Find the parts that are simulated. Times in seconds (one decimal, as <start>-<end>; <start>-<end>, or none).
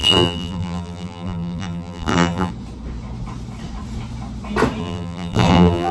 0.0-2.5; 4.8-5.9